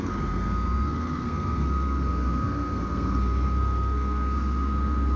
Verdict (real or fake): fake